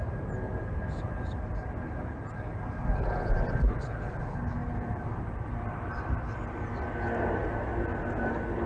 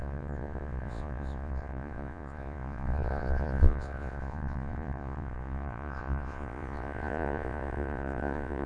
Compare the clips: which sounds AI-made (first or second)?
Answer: second